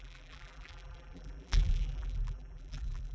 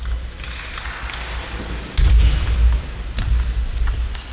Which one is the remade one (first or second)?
first